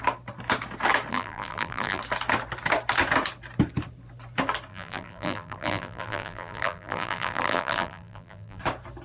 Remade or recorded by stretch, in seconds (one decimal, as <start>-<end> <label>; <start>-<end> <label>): 0.0-1.1 recorded; 1.1-2.0 remade; 2.0-4.7 recorded; 4.7-8.6 remade; 8.6-9.0 recorded